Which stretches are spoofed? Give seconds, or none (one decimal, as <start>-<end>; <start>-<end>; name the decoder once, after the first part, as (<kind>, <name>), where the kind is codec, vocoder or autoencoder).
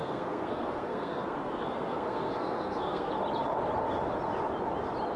0.0-3.1 (codec, SNAC)